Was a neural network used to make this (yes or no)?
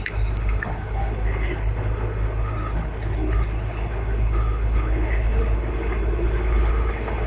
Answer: yes